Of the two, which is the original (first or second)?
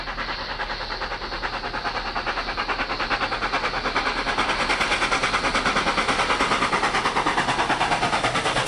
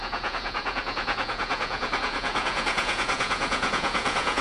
first